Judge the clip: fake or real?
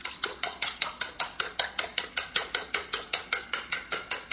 fake